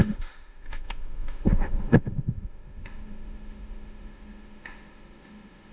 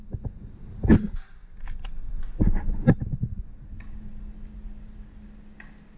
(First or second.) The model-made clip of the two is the first